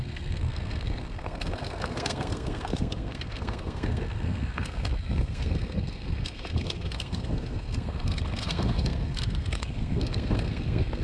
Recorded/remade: remade